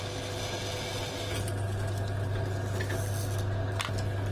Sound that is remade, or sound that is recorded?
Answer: recorded